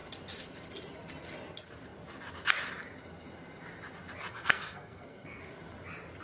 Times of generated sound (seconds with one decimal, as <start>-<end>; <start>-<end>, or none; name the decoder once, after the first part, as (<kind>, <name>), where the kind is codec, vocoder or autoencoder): 4.3-5.4 (codec, SNAC)